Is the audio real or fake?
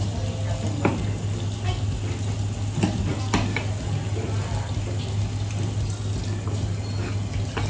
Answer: real